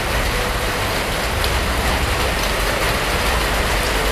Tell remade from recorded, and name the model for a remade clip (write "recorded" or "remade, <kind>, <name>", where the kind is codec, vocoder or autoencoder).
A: recorded